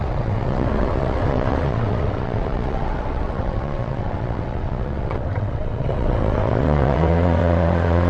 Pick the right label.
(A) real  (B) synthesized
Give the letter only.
B